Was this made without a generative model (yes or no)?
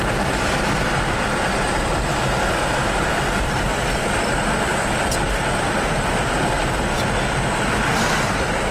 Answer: yes